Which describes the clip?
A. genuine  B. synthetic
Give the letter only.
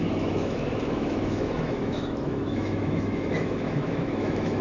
B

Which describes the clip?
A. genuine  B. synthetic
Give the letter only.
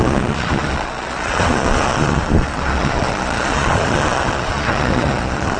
B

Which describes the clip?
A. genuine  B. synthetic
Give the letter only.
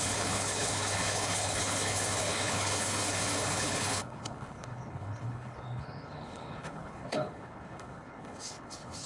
B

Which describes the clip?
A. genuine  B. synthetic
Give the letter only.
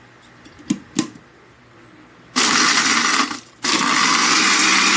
A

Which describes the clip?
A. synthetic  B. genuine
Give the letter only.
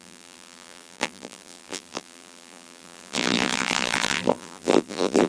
A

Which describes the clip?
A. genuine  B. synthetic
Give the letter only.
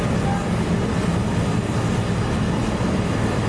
A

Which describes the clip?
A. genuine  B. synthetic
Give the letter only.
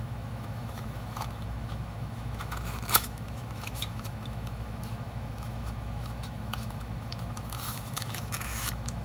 B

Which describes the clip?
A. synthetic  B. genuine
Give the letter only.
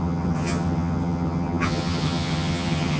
A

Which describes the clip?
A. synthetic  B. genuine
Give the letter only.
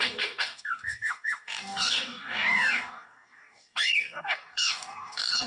A